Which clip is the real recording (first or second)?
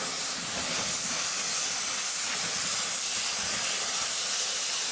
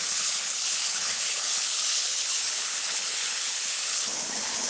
first